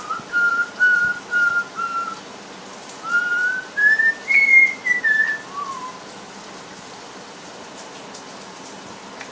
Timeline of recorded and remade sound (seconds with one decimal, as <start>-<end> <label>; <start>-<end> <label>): 0.0-9.3 recorded